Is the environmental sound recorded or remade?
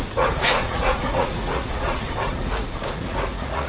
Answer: remade